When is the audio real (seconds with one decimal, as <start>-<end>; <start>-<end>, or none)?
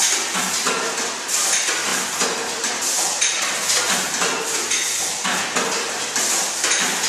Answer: 0.0-7.1